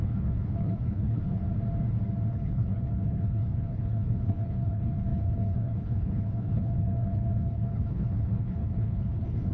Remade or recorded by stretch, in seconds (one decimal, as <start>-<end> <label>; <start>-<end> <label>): 0.0-1.4 remade; 1.4-2.3 recorded; 2.3-9.5 remade